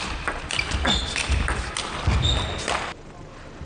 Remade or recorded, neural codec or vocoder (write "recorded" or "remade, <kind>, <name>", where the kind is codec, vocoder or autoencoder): recorded